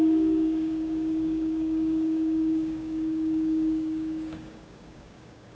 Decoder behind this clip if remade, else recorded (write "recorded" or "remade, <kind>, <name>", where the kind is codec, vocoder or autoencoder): remade, codec, DAC